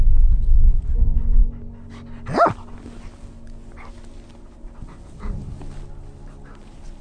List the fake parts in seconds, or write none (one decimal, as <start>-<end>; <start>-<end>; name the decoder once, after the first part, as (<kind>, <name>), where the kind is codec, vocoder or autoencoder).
none